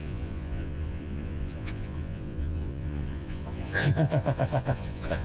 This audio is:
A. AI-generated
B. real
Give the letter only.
A